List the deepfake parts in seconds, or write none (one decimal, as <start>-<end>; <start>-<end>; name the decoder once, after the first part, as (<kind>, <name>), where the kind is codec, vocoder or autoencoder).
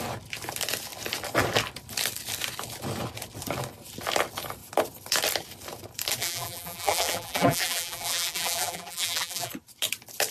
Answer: 6.2-9.5 (vocoder, BigVGAN v2)